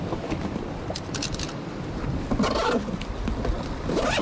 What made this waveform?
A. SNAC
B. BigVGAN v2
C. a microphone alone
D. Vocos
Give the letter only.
C